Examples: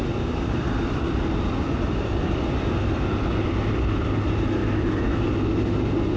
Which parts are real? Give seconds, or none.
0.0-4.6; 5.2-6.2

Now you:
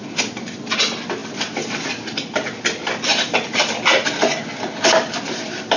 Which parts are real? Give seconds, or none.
0.0-5.8

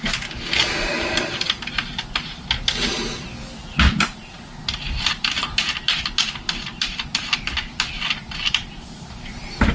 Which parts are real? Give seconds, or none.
0.0-6.2; 7.2-9.7

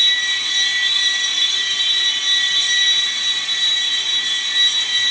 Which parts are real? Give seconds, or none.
0.0-5.1

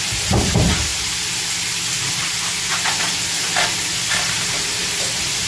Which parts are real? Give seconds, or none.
0.9-4.2

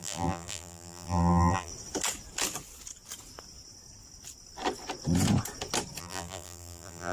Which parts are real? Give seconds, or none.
1.7-6.0

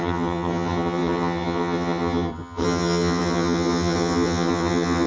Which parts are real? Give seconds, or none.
none